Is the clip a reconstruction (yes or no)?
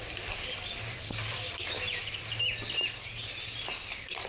no